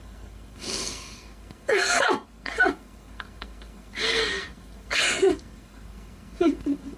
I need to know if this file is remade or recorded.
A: remade